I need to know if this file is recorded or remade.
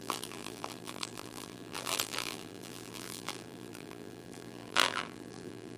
remade